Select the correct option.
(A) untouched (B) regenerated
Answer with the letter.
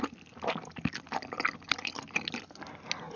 A